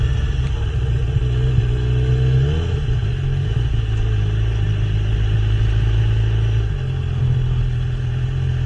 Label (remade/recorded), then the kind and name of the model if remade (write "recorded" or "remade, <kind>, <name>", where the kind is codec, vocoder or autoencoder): recorded